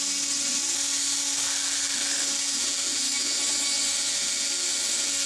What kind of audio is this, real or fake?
real